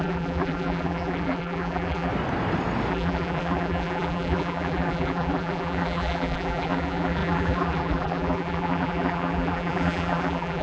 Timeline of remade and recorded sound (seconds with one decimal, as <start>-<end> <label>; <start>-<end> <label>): 0.0-2.1 remade; 2.1-2.9 recorded; 2.9-10.6 remade